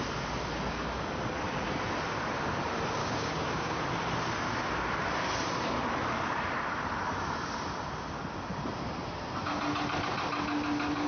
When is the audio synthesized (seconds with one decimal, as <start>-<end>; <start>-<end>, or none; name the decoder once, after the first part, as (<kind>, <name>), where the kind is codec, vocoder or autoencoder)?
3.0-3.8 (codec, DAC)